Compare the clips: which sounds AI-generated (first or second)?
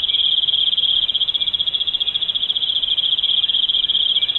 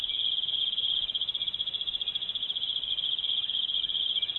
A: second